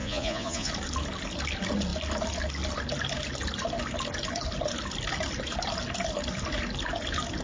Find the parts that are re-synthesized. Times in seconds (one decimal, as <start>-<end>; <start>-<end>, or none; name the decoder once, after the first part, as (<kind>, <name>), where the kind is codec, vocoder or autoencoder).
0.0-0.7 (vocoder, Vocos)